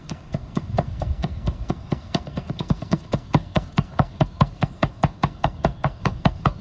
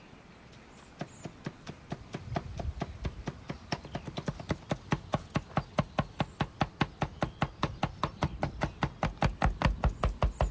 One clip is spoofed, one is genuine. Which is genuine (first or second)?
second